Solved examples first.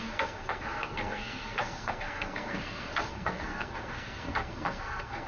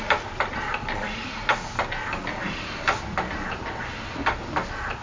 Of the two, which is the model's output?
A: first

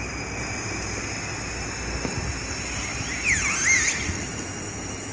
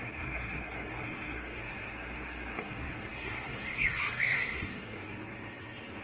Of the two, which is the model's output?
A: second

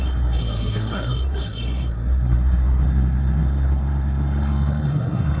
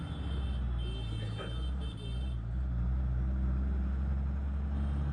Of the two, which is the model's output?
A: first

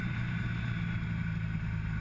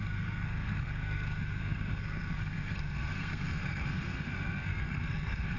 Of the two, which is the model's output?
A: second